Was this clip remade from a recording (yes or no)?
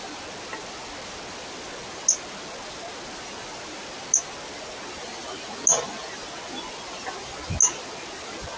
no